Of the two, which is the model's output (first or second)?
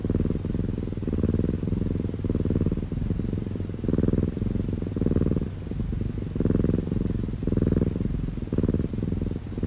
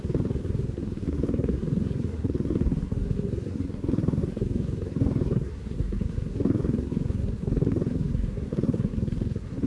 second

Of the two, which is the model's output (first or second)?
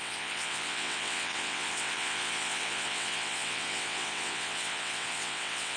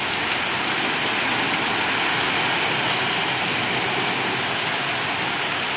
first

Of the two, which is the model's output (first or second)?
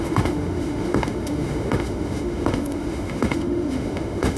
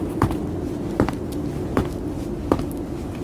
first